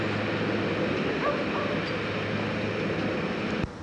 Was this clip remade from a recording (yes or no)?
no